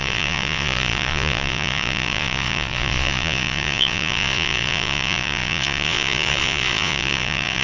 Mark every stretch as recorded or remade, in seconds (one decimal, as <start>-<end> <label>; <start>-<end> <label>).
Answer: 0.0-7.6 remade